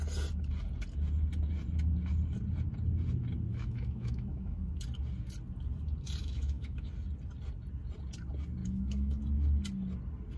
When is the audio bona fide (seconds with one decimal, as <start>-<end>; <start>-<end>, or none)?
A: 0.0-3.5; 4.7-6.2; 6.9-8.6; 9.2-10.4